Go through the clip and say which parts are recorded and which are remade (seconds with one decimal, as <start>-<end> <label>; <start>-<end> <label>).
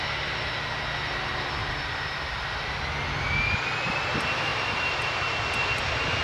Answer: 0.0-6.2 recorded